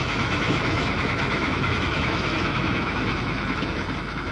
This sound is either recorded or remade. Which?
remade